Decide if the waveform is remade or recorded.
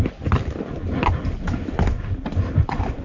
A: recorded